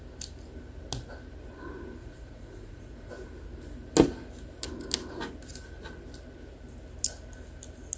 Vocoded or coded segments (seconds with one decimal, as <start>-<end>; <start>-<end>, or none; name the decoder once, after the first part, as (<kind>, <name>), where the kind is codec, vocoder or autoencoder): 2.0-3.1 (vocoder, Vocos)